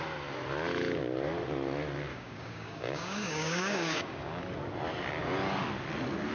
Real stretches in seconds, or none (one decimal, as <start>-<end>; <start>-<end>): 0.0-2.1; 4.4-6.3